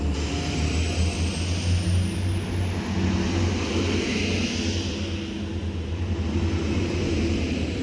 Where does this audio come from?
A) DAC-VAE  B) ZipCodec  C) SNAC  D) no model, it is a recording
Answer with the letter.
D